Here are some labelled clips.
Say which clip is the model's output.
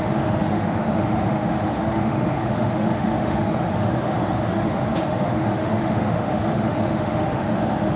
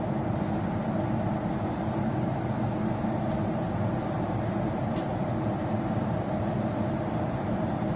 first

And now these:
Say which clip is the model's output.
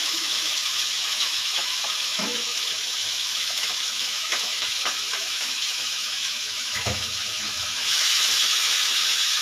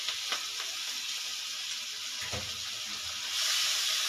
first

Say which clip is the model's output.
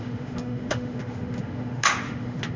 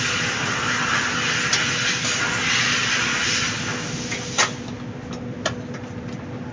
first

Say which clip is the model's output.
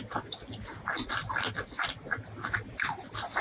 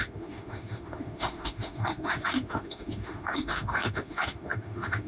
second